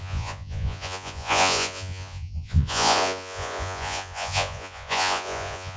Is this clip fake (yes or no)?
yes